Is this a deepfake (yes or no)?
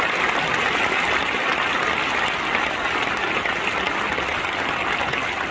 no